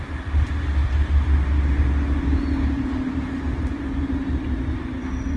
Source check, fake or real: real